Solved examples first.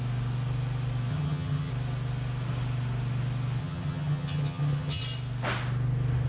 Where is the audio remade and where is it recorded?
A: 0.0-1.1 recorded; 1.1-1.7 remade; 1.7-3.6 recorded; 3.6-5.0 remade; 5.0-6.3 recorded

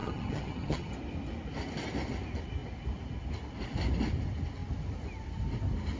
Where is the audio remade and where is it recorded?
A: 0.0-0.9 remade; 0.9-6.0 recorded